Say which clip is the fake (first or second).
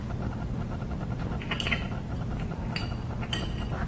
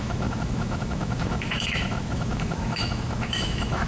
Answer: second